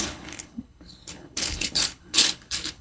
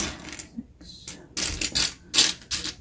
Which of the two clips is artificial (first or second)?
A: first